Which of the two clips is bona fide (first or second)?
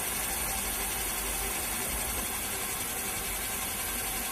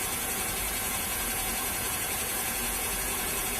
first